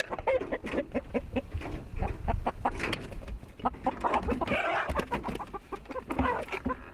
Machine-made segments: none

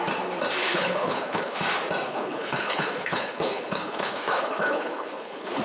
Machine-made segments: 0.6-1.6 (codec, HILCodec); 2.1-5.6

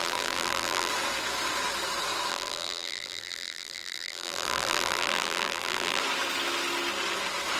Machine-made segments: 0.0-0.9 (vocoder, BigVGAN v2); 2.3-6.0